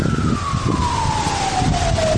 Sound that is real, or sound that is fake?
real